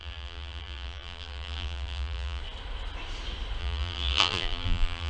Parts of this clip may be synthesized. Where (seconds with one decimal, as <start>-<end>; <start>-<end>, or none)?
0.0-2.4; 3.6-5.1